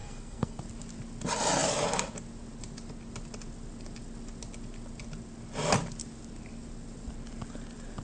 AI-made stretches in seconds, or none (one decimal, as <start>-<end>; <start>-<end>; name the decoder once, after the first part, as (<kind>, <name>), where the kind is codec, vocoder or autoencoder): 0.0-0.6 (codec, SNAC)